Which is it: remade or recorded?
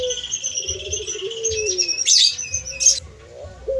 recorded